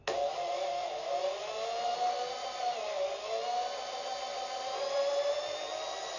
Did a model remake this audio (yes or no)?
no